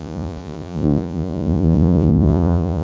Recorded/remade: remade